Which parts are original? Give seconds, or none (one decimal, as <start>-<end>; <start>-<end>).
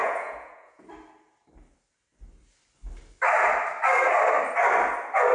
0.8-5.3